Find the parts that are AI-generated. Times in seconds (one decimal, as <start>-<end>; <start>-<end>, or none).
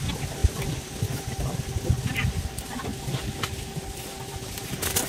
0.4-1.5; 2.9-5.1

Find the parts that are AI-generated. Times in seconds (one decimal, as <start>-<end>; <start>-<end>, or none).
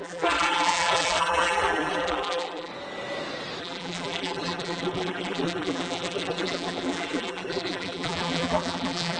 0.0-2.7; 3.6-9.2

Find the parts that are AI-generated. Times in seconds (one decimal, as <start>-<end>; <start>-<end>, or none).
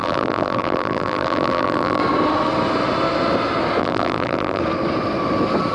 0.0-2.0; 3.8-4.6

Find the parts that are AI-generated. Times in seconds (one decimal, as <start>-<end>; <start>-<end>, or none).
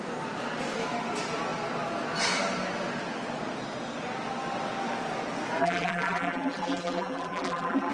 5.6-7.9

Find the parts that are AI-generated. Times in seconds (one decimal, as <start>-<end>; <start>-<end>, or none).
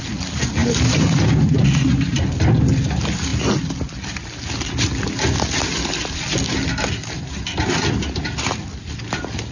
0.6-2.1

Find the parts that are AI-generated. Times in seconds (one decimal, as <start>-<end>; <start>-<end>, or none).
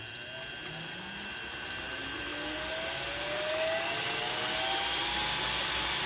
none